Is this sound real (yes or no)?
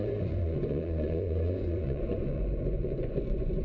no